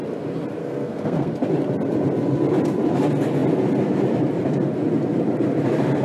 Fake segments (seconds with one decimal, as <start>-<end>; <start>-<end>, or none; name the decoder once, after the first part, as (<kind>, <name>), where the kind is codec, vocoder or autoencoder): 0.6-1.3 (codec, SNAC)